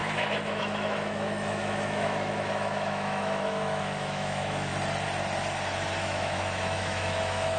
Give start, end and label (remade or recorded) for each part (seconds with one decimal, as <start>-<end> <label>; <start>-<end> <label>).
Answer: 0.0-4.7 remade; 4.7-6.0 recorded; 6.0-7.6 remade